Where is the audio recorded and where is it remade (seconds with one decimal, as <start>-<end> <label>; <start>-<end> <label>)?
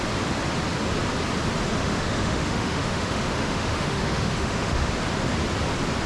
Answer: 0.0-1.8 recorded; 1.8-4.9 remade; 4.9-6.1 recorded